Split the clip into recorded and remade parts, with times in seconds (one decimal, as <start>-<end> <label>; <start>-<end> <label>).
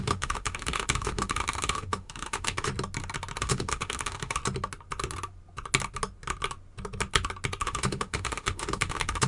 0.0-2.7 remade; 2.7-3.4 recorded; 3.4-4.4 remade; 4.4-7.6 recorded; 7.6-9.3 remade